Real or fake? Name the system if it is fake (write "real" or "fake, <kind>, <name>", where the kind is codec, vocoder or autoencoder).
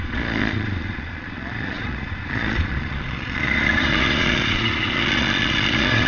fake, vocoder, Vocos